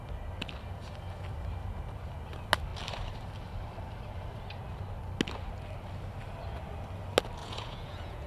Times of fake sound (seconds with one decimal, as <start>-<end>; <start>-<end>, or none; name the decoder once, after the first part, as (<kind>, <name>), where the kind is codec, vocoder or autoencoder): 7.4-8.3 (vocoder, Vocos)